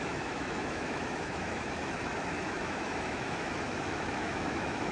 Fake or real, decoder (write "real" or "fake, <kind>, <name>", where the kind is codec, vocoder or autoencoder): fake, autoencoder, DAC-VAE